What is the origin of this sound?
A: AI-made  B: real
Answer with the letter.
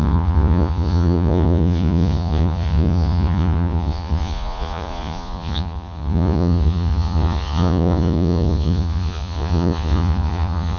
A